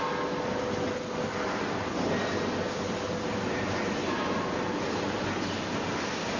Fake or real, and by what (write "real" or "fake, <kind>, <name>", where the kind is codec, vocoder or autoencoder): real